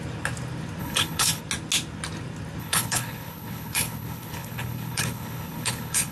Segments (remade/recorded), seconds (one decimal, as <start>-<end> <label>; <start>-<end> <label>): 0.0-0.8 recorded; 0.8-1.4 remade; 1.4-2.6 recorded; 2.6-6.1 remade